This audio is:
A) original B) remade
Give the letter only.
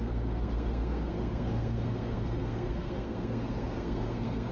B